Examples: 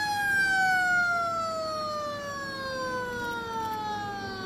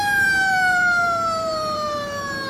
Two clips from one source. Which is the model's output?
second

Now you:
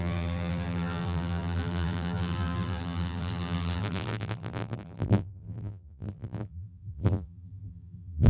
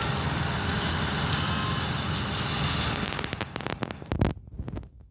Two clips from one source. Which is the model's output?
first